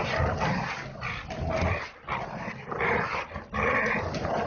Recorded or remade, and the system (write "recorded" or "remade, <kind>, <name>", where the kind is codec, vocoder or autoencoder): recorded